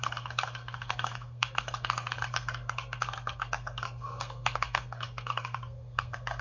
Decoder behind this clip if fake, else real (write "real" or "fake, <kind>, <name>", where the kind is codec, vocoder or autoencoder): fake, codec, SNAC